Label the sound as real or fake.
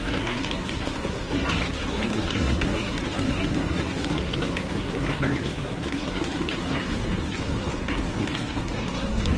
fake